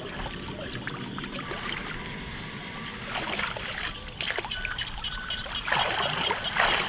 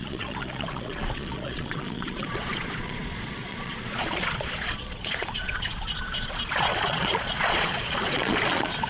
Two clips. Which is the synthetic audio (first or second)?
second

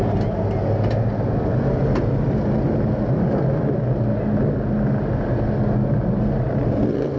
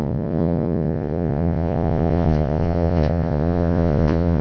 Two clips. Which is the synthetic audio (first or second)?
second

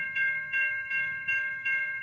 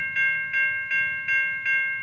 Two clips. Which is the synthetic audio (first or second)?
first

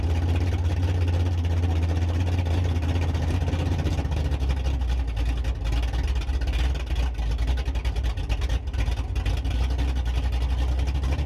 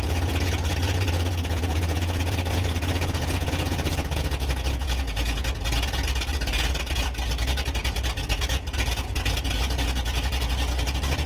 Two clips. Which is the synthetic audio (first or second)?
second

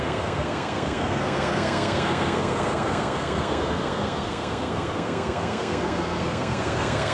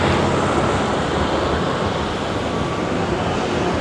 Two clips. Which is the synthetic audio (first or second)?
first